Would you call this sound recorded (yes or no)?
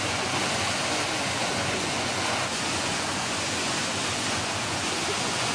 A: no